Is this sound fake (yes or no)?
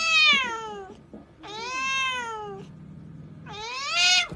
no